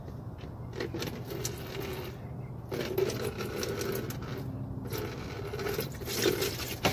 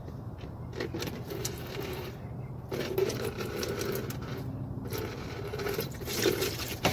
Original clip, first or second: first